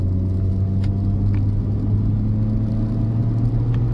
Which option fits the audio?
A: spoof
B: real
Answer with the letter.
B